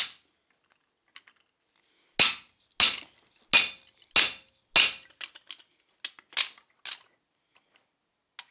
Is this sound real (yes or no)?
yes